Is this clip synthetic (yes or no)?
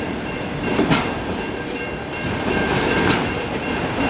yes